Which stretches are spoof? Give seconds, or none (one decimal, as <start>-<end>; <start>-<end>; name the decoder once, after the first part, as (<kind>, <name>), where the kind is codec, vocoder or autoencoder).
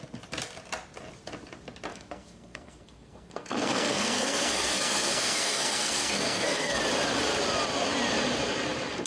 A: 1.9-6.8 (codec, SNAC)